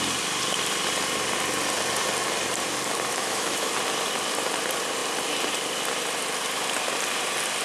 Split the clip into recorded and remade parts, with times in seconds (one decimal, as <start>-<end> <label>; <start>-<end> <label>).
0.0-3.1 recorded; 3.1-3.7 remade; 3.7-7.6 recorded